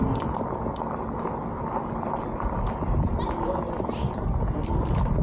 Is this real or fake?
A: real